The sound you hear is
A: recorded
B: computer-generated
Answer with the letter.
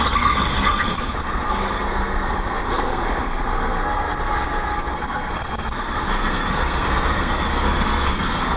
B